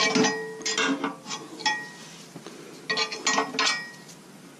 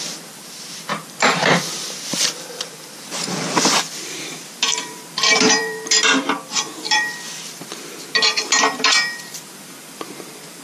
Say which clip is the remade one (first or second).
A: second